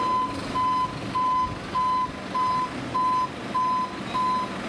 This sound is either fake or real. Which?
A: real